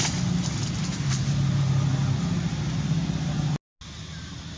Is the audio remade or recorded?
recorded